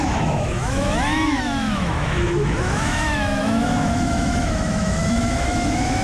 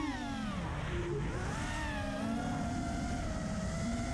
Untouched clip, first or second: second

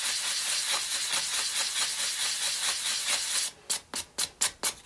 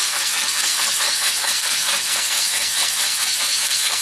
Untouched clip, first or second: first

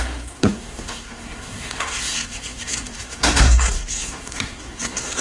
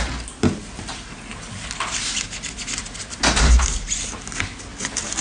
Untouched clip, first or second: second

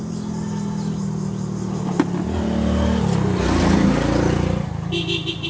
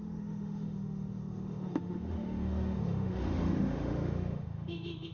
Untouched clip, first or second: first